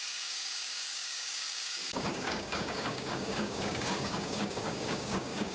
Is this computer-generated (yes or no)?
yes